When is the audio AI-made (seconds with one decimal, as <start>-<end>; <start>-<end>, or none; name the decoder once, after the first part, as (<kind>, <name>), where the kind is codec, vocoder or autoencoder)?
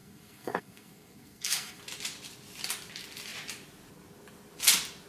0.0-1.8 (codec, SNAC)